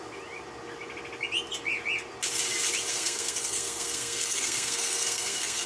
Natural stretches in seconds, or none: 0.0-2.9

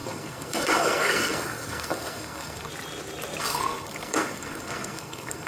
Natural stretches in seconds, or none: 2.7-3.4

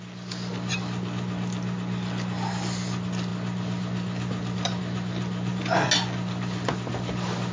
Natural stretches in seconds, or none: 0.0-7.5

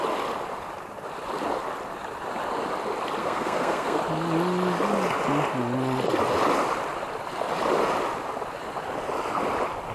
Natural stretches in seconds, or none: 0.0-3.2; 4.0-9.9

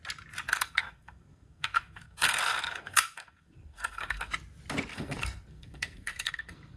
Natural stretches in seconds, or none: 0.0-0.5; 4.3-4.9

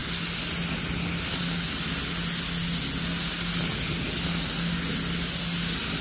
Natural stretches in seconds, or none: 0.0-6.0

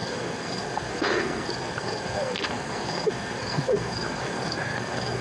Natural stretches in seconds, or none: none

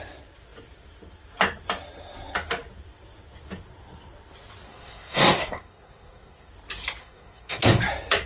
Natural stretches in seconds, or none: 0.0-4.7; 6.5-7.0; 7.8-8.3